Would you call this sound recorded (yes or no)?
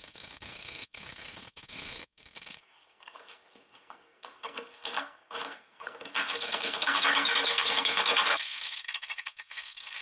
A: no